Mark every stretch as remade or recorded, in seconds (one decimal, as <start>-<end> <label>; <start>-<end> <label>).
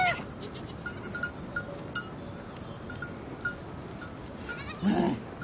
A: 0.0-5.4 recorded